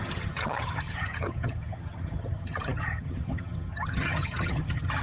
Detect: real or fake fake